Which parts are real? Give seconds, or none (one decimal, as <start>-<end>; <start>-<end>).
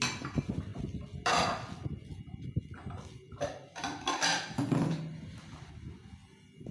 0.0-6.7